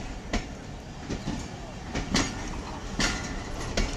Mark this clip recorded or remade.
recorded